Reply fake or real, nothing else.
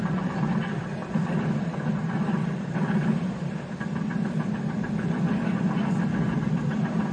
fake